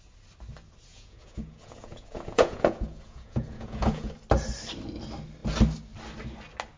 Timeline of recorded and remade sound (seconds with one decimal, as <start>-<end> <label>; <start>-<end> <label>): 0.0-0.9 recorded; 0.9-4.1 remade; 4.1-6.8 recorded